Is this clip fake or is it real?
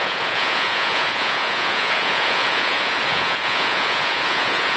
fake